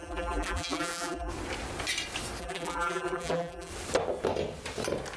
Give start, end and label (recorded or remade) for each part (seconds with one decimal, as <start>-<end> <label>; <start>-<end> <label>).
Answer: 0.0-1.3 remade; 1.3-2.4 recorded; 2.4-3.7 remade; 3.7-5.2 recorded